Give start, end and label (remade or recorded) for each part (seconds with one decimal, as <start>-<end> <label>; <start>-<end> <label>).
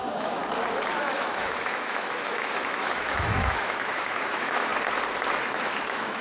0.0-0.4 remade; 0.4-1.0 recorded; 1.0-4.7 remade; 4.7-5.4 recorded; 5.4-6.2 remade